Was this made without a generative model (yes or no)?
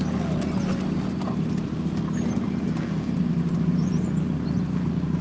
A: yes